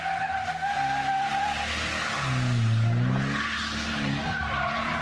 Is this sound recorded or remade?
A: recorded